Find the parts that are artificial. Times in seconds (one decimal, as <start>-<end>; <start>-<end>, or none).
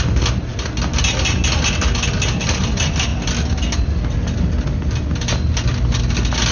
none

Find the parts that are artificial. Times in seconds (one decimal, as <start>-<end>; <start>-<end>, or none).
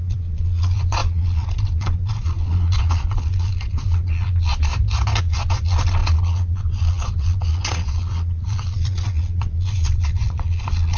0.0-4.7; 5.2-11.0